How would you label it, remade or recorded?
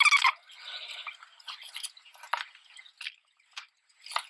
recorded